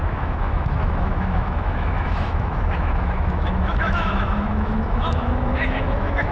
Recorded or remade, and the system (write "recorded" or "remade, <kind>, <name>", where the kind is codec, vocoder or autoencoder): remade, autoencoder, DAC-VAE